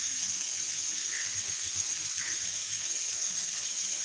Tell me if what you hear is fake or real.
fake